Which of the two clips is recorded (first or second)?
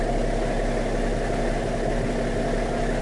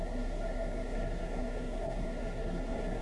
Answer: first